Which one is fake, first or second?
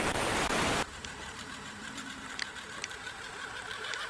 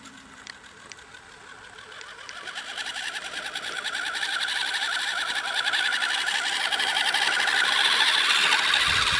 first